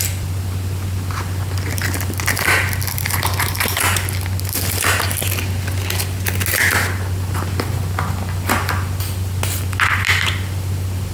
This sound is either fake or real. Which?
real